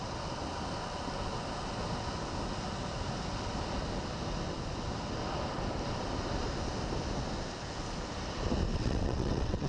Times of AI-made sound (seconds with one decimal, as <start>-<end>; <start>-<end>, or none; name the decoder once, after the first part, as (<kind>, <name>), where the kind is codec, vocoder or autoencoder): 8.7-9.7 (vocoder, WaveNeXt)